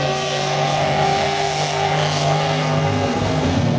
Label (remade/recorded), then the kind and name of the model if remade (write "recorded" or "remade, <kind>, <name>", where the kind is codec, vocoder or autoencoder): remade, codec, SNAC